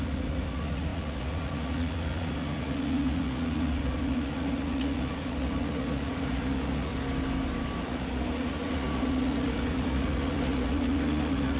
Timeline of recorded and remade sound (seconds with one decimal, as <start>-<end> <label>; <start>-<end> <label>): 0.0-6.9 remade; 6.9-7.8 recorded; 7.8-11.6 remade